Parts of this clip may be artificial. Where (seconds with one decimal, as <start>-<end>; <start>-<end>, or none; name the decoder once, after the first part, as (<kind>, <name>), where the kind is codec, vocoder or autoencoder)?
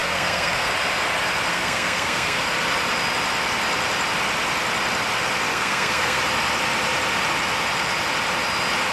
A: 0.0-0.7 (codec, SNAC); 1.5-2.5; 5.5-6.2